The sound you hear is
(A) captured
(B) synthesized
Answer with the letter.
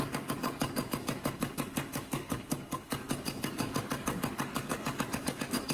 B